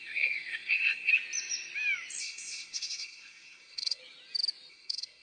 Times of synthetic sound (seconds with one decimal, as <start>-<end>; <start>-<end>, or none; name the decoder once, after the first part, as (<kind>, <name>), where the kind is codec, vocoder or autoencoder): 0.0-1.1 (codec, SNAC); 2.2-4.0; 4.7-5.2